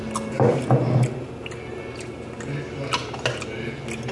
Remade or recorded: recorded